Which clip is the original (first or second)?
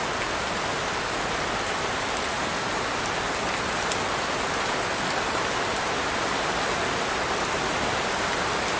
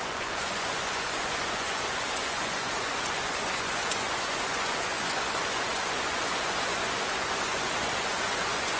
first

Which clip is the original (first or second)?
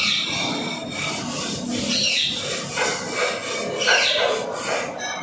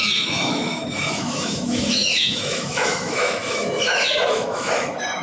first